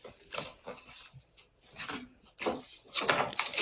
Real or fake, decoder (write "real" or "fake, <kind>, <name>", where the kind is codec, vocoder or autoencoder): real